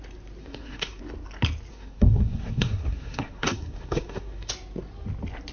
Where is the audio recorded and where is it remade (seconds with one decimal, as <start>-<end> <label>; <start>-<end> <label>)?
0.0-0.4 recorded; 0.4-1.0 remade; 1.0-1.7 recorded; 1.7-4.5 remade; 4.5-5.5 recorded

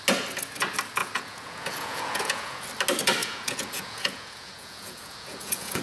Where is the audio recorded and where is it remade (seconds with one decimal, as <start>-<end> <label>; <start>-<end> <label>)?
0.0-1.0 recorded; 1.0-2.6 remade; 2.6-3.2 recorded; 3.2-5.8 remade

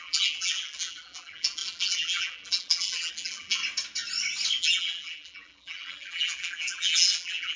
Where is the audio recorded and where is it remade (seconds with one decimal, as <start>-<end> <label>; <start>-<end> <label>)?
0.0-3.6 remade; 3.6-4.6 recorded; 4.6-7.6 remade

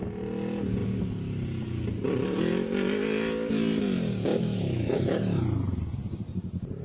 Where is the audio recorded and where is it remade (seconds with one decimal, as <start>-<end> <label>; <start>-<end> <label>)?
0.0-4.3 recorded; 4.3-5.4 remade; 5.4-6.8 recorded

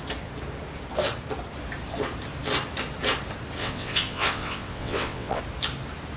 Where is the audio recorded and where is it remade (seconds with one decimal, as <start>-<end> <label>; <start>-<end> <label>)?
0.0-3.6 recorded; 3.6-5.4 remade; 5.4-6.2 recorded

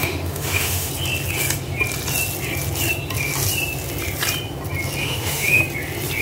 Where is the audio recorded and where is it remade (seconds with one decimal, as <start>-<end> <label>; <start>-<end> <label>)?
0.0-0.9 remade; 0.9-5.0 recorded; 5.0-5.6 remade; 5.6-6.2 recorded

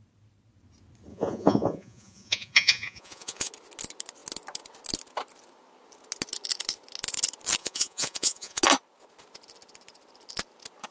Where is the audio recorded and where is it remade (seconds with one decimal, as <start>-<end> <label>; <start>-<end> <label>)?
0.0-1.1 recorded; 1.1-3.5 remade; 3.5-7.6 recorded; 7.6-8.6 remade; 8.6-10.9 recorded